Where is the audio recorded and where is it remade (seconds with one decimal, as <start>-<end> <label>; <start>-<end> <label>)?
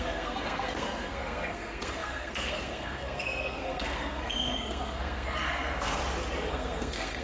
0.0-6.0 remade; 6.0-6.5 recorded; 6.5-7.2 remade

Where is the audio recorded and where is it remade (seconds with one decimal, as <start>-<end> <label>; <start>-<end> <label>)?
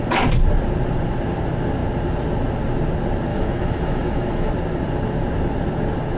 0.0-3.3 recorded; 3.3-4.5 remade; 4.5-6.2 recorded